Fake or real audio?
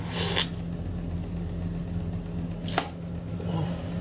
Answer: real